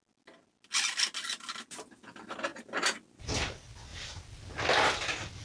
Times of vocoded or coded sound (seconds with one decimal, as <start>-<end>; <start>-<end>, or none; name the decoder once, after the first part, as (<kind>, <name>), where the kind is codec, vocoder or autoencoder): none